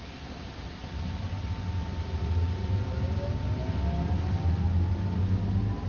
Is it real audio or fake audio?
real